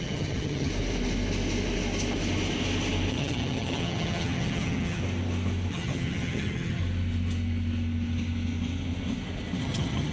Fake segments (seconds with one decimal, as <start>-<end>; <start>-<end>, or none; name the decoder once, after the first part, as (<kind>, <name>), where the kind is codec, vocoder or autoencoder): 0.0-0.7 (vocoder, HiFi-GAN); 3.1-5.0; 5.7-6.8; 9.6-10.1